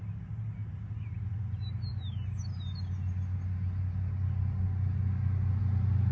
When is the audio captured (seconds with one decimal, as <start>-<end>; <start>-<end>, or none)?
0.0-6.1